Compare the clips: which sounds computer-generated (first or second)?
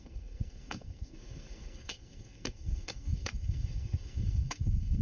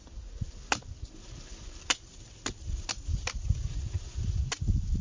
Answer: first